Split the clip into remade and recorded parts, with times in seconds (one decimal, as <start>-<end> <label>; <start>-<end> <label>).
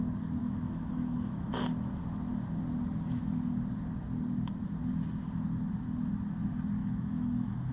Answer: 0.0-0.4 recorded; 0.4-1.5 remade; 1.5-6.8 recorded; 6.8-7.7 remade